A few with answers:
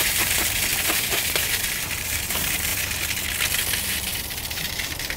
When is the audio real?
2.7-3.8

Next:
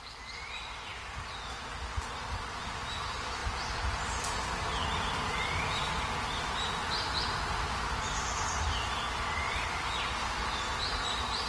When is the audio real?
0.0-11.5

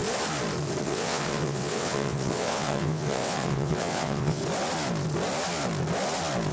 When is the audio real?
0.0-0.8; 4.4-6.5